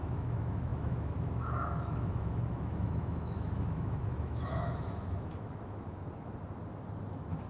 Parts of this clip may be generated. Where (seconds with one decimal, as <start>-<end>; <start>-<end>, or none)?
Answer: 0.0-6.0; 7.1-7.5